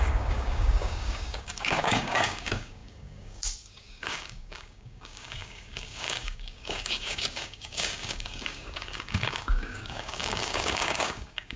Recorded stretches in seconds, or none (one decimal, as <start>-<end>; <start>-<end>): none